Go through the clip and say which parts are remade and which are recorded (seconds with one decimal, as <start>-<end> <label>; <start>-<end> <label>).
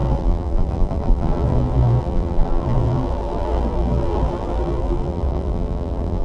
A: 0.0-6.2 remade